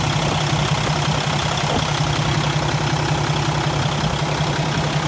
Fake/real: real